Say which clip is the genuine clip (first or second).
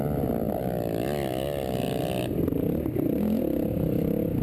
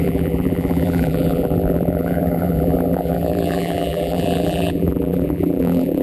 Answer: first